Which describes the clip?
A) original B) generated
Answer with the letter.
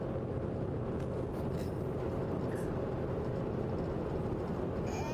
A